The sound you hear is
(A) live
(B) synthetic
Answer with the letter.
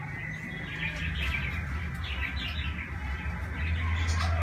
A